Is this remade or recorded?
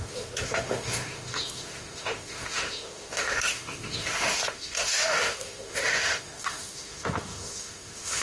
remade